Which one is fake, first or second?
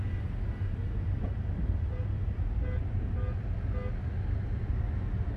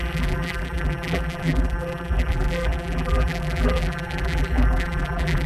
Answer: second